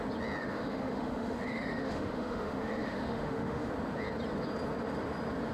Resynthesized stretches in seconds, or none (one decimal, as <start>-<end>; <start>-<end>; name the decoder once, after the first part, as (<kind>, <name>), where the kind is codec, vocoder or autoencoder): 0.4-3.7 (autoencoder, DAC-VAE)